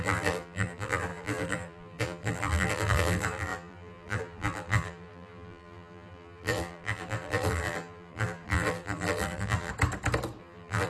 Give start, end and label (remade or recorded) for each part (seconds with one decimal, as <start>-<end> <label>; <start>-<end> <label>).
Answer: 0.0-9.7 remade; 9.7-10.4 recorded; 10.4-10.9 remade